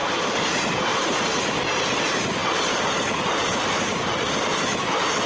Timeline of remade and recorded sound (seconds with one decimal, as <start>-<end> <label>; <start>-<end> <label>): 0.0-5.3 recorded